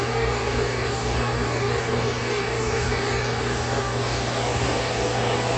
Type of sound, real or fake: fake